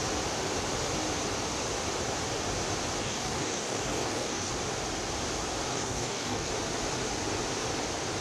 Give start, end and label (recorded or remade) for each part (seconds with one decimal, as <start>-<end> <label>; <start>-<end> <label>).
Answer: 0.0-3.0 recorded; 3.0-4.5 remade; 4.5-5.7 recorded; 5.7-6.5 remade; 6.5-8.2 recorded